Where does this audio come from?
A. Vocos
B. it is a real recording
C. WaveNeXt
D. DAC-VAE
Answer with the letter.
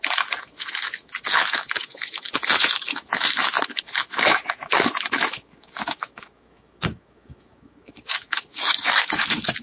D